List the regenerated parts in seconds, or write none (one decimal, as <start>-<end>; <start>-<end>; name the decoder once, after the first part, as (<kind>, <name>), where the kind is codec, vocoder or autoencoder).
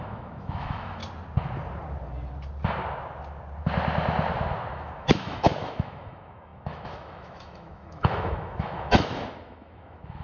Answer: 0.0-1.0 (autoencoder, DAC-VAE); 4.7-10.2